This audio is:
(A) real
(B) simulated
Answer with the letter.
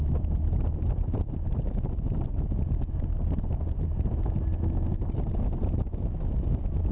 A